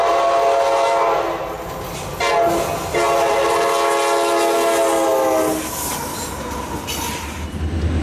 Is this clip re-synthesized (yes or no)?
no